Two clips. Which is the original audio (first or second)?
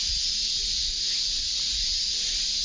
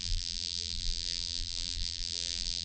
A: first